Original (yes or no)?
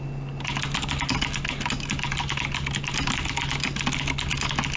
yes